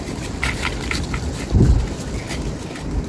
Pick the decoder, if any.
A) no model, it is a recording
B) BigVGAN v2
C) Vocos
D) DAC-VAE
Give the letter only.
A